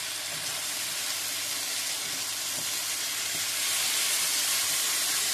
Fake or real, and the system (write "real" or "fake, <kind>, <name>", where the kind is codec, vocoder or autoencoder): real